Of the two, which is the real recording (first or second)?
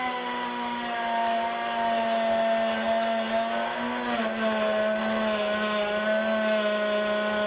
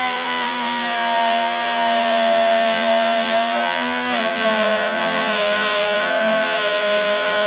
first